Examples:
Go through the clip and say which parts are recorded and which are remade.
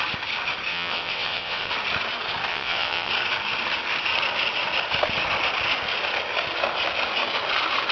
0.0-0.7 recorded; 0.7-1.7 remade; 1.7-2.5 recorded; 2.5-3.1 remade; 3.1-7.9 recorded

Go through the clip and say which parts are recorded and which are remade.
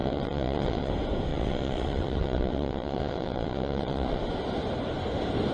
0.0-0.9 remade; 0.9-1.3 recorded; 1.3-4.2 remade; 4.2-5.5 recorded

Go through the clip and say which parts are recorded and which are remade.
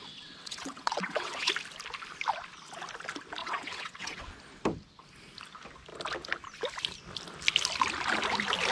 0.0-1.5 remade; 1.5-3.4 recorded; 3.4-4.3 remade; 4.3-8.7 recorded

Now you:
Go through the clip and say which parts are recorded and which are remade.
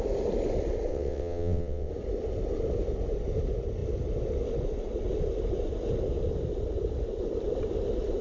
0.0-0.9 recorded; 0.9-1.9 remade; 1.9-8.2 recorded